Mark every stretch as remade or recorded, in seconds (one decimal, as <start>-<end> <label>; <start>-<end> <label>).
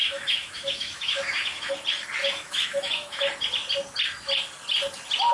0.0-1.7 remade; 1.7-2.2 recorded; 2.2-3.2 remade; 3.2-5.3 recorded